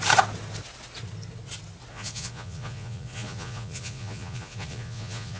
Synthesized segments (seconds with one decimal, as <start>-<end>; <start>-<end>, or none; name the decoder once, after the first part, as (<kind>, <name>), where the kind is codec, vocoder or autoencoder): 1.9-5.4 (vocoder, Vocos)